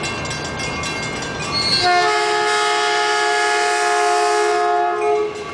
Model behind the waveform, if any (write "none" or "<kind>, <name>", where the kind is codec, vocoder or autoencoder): none